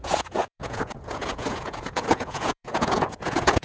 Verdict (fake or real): fake